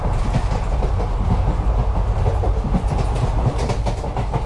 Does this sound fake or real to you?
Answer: real